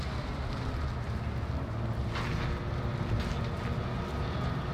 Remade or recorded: recorded